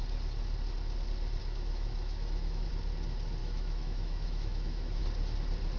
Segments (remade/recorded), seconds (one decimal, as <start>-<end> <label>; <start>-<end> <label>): 0.0-1.4 recorded; 1.4-2.7 remade; 2.7-3.4 recorded; 3.4-5.0 remade; 5.0-5.8 recorded